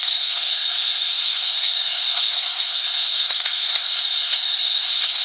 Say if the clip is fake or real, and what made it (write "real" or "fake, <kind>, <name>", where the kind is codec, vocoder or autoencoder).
fake, codec, SNAC